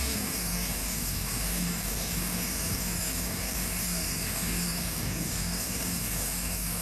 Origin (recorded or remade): remade